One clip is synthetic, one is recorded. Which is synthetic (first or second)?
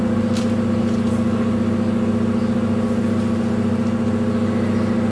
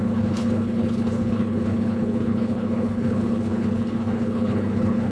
second